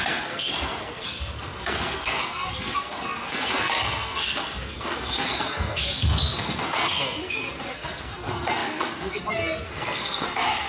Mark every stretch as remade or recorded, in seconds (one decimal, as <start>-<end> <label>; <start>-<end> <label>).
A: 0.0-10.7 remade